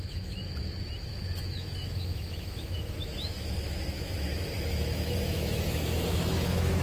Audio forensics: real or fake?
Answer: fake